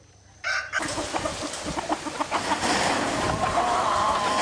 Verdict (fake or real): real